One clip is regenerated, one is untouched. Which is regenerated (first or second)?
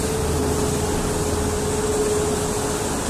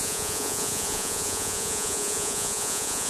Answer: second